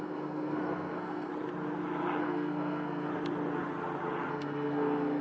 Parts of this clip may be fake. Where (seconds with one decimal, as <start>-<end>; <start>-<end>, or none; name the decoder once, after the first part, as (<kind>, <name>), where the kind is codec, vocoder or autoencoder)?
0.0-1.3 (codec, SNAC); 2.2-3.1; 4.3-5.2